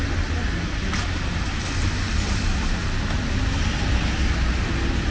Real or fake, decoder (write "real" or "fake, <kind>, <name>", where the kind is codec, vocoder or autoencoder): real